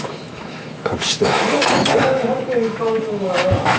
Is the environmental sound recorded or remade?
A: remade